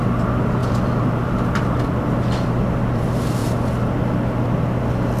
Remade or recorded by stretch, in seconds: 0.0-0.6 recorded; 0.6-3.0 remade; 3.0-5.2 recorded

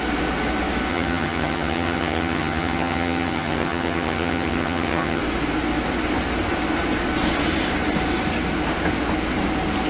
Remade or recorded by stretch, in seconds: 0.0-0.9 recorded; 0.9-5.2 remade; 5.2-9.9 recorded

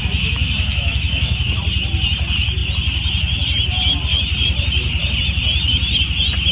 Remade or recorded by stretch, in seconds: 0.0-1.6 remade; 1.6-6.5 recorded

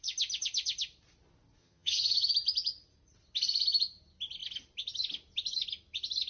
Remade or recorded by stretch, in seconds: 0.0-1.6 recorded; 1.6-2.3 remade; 2.3-6.3 recorded

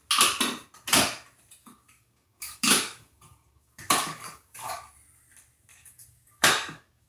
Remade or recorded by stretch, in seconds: 0.0-1.6 recorded; 1.6-4.9 remade; 4.9-5.7 recorded; 5.7-7.1 remade

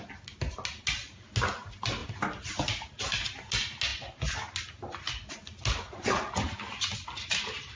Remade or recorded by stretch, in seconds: 0.0-7.8 recorded

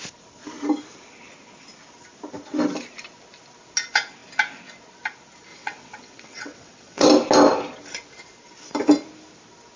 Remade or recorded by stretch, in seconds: 0.0-5.5 recorded; 5.5-7.1 remade; 7.1-9.8 recorded

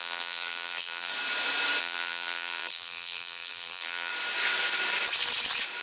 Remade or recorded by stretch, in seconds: 0.0-1.1 remade; 1.1-1.8 recorded; 1.8-4.1 remade; 4.1-5.8 recorded